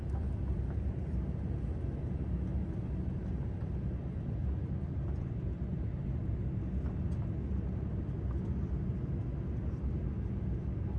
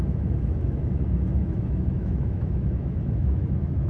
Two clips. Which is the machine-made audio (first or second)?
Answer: second